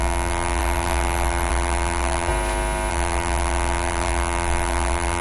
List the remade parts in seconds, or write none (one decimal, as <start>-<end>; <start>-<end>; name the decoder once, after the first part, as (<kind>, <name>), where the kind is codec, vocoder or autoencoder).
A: 0.0-2.3 (vocoder, BigVGAN v2); 2.9-5.2